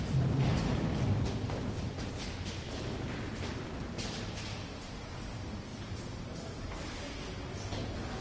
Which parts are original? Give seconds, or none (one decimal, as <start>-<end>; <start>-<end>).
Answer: 0.0-8.2